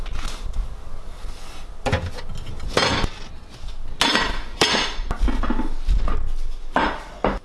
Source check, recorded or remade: recorded